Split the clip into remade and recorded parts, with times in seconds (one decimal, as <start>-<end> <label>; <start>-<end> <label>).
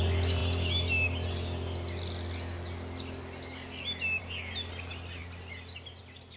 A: 0.0-6.4 recorded